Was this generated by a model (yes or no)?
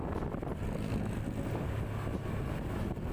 no